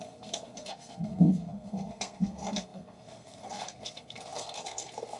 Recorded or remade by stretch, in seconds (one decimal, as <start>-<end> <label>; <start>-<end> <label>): 0.0-5.2 remade